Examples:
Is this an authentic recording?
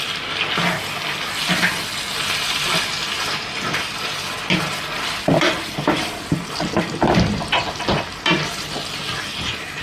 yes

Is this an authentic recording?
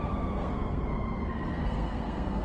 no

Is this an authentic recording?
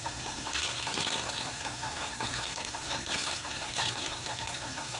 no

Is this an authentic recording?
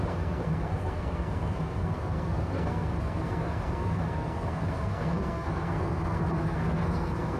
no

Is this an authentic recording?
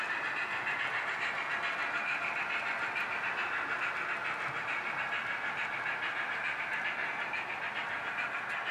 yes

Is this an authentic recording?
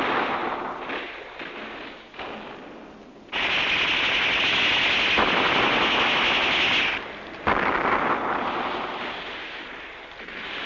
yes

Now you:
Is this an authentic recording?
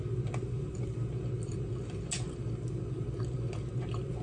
yes